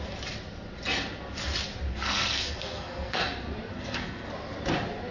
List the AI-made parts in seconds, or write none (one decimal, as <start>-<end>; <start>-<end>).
1.9-3.2; 3.7-4.3